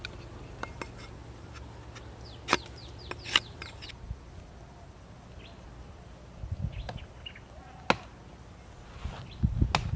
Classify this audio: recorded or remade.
recorded